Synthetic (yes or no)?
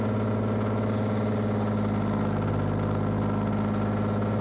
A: no